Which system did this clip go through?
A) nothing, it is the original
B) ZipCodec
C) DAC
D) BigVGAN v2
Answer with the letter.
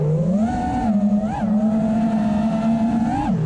A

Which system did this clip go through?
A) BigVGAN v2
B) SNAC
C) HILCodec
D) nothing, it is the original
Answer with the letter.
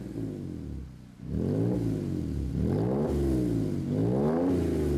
D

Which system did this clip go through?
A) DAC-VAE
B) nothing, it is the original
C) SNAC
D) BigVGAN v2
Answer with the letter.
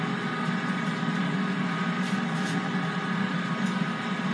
B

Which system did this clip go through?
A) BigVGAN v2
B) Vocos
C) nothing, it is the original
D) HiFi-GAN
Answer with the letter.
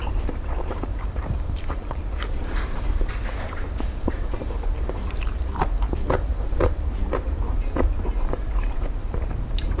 A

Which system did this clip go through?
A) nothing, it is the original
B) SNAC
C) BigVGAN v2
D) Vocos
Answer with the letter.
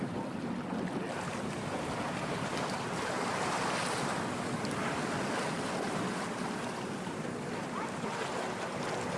A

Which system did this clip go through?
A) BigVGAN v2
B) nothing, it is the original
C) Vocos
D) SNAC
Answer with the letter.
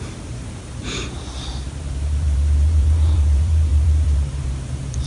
A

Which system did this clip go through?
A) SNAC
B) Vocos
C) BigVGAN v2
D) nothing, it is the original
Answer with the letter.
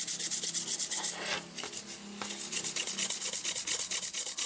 D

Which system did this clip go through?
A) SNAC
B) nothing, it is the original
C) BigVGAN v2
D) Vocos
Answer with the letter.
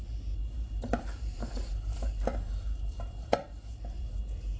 C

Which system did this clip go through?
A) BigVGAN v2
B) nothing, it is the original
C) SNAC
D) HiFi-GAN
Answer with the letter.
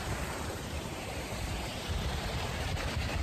A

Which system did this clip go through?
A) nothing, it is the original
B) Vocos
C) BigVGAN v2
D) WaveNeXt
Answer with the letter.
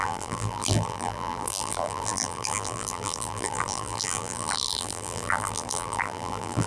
C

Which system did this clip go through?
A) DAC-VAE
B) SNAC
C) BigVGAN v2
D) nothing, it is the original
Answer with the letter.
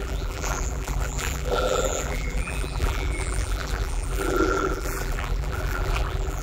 C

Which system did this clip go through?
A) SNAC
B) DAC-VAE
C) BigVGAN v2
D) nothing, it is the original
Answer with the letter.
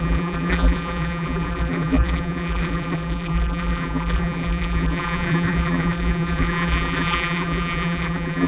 C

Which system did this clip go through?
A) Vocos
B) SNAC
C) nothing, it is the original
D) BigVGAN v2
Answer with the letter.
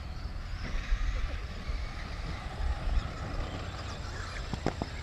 C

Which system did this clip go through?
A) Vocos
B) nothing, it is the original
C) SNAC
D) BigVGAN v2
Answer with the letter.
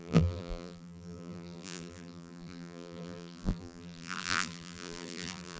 D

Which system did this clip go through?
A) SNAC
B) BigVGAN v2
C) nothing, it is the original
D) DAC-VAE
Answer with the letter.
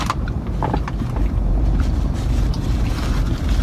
B